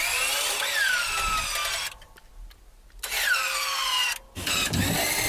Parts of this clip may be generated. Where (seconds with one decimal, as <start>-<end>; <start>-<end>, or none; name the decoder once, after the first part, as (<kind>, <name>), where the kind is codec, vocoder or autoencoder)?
none